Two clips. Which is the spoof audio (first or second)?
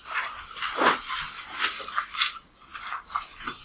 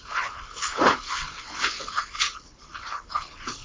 second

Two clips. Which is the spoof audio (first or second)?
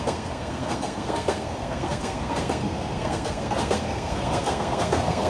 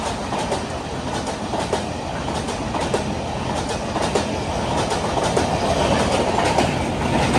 first